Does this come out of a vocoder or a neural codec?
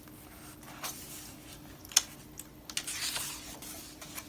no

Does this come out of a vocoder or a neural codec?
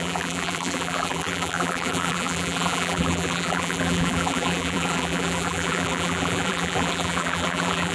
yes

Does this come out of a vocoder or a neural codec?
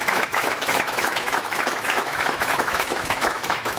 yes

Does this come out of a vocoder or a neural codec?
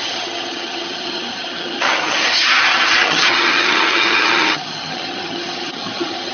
yes